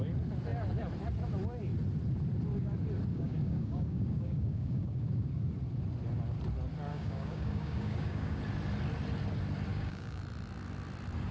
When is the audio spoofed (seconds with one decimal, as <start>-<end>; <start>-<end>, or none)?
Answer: 3.1-5.4; 6.9-8.4; 9.7-10.2